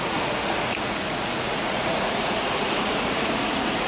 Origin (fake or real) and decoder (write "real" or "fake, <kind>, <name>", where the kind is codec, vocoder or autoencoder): fake, vocoder, Vocos